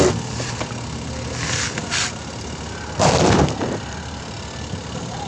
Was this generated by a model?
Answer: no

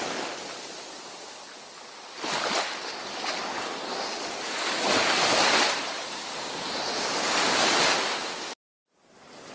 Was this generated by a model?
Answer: no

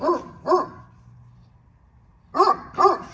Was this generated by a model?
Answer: no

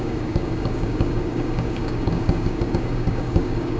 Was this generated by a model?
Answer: yes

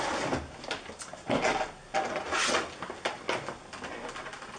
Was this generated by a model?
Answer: no